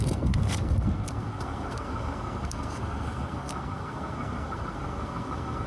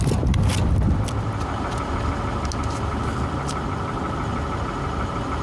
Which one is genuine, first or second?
second